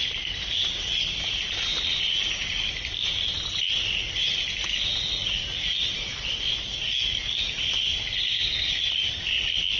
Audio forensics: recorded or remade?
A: recorded